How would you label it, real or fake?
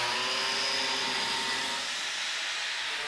real